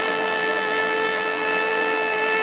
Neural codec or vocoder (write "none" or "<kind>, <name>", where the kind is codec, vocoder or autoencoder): vocoder, BigVGAN v2